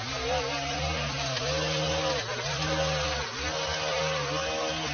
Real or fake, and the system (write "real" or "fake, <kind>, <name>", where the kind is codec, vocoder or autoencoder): real